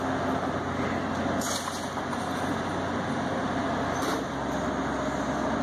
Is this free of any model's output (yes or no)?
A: yes